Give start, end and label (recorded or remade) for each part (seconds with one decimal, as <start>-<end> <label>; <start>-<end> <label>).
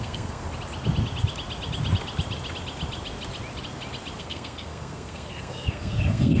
0.0-0.4 remade; 0.4-4.2 recorded; 4.2-6.4 remade